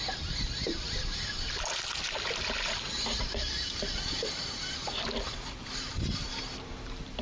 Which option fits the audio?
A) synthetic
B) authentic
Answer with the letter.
B